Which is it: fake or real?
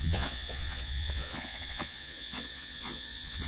fake